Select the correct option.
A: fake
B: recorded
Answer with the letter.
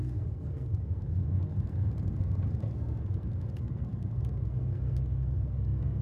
A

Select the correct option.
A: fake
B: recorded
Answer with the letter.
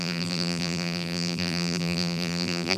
A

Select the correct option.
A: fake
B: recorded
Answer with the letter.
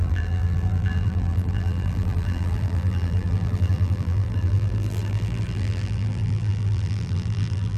A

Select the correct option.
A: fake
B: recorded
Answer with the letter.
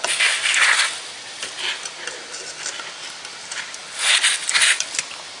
B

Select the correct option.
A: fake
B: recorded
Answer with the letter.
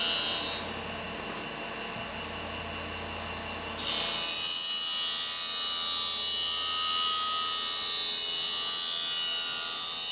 B